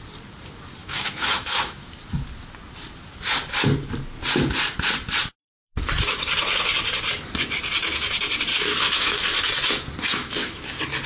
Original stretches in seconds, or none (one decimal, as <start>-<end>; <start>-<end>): 0.0-0.8; 1.9-8.5; 9.2-10.1; 10.7-11.1